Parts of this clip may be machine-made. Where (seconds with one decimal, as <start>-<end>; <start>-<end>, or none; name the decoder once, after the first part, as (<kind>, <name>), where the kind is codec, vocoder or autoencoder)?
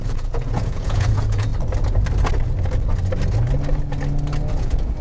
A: 0.0-1.5 (vocoder, Vocos); 4.5-5.0